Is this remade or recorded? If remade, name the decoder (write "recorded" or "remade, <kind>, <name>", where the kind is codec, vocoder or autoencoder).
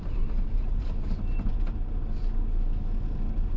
recorded